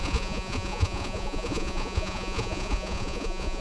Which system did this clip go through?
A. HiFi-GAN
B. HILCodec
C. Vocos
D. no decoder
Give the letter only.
C